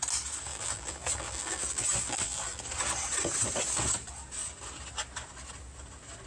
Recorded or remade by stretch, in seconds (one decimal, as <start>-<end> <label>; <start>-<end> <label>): 0.0-0.5 recorded; 0.5-2.6 remade; 2.6-6.3 recorded